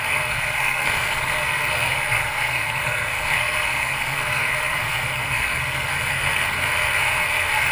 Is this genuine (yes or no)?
no